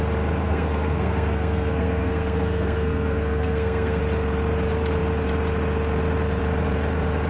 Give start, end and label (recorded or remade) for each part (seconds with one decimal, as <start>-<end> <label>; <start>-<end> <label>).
0.0-0.4 recorded; 0.4-4.0 remade; 4.0-7.3 recorded